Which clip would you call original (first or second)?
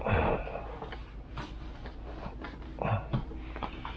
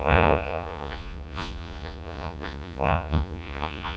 first